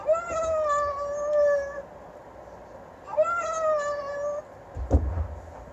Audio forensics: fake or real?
real